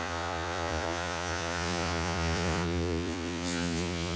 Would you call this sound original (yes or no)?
no